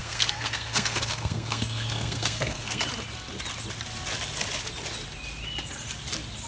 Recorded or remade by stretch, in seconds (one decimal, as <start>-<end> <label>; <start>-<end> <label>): 0.0-2.8 remade; 2.8-6.5 recorded

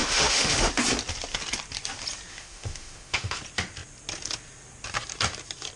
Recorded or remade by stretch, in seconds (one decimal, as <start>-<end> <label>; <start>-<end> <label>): 0.0-0.7 remade; 0.7-2.3 recorded; 2.3-3.4 remade; 3.4-5.8 recorded